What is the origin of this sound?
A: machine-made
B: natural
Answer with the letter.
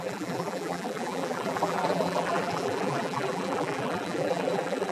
A